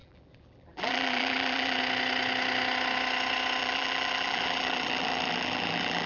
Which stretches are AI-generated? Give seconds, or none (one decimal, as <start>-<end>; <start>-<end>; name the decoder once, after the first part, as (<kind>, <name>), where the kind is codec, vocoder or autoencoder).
0.0-1.8 (vocoder, BigVGAN v2); 3.6-6.1